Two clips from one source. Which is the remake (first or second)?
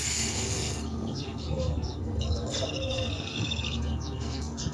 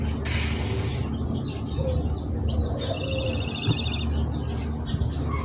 first